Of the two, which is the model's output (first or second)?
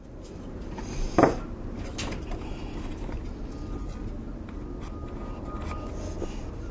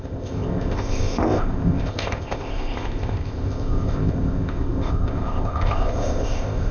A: second